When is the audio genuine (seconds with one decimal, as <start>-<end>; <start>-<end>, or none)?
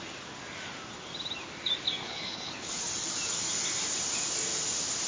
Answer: 0.0-2.0; 2.8-5.1